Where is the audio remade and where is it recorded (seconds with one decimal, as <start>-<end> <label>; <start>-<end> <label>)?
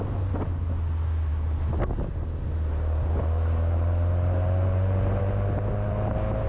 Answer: 0.0-6.5 recorded